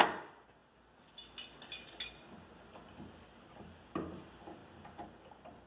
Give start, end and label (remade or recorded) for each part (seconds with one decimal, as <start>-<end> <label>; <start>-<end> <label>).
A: 0.0-5.7 recorded